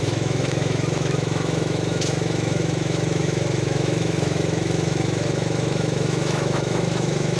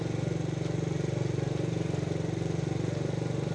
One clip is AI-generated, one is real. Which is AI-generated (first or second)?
first